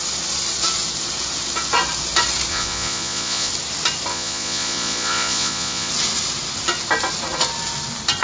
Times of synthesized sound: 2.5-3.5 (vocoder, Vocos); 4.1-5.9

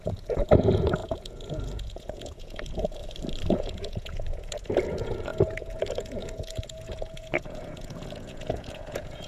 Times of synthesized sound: 0.0-3.0 (vocoder, Vocos); 3.5-9.3

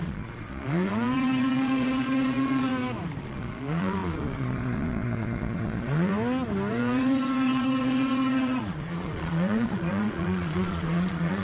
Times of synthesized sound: 0.0-2.7 (vocoder, Vocos); 3.2-6.1; 6.7-11.4

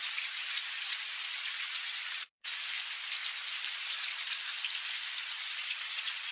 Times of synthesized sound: 0.0-2.5 (vocoder, Vocos); 3.7-4.5; 5.2-6.3